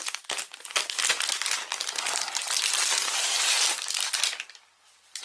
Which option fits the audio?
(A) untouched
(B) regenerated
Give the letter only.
A